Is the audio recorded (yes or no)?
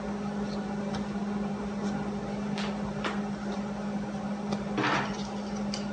yes